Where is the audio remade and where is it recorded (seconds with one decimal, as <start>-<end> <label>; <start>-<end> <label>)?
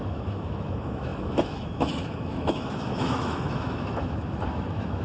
0.0-5.0 remade